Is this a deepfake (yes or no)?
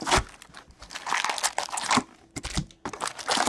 no